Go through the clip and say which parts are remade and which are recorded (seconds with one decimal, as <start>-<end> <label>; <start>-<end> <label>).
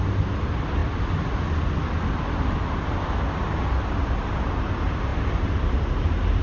0.0-6.4 recorded